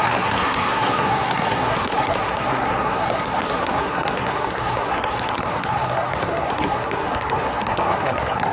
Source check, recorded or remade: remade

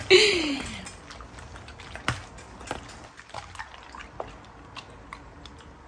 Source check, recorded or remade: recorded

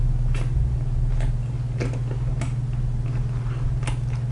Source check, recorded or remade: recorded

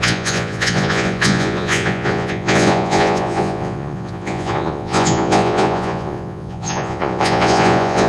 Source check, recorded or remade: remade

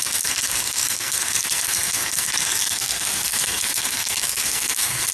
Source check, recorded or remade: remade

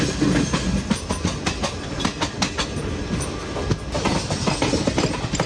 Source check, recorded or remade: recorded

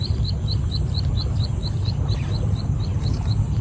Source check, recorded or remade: recorded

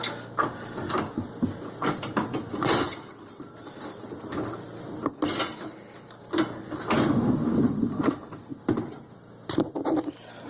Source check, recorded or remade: recorded